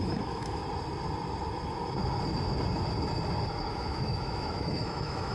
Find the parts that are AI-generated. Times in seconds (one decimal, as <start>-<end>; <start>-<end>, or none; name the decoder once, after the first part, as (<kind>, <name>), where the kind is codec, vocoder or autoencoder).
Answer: 0.0-0.6 (autoencoder, DAC-VAE); 3.7-5.3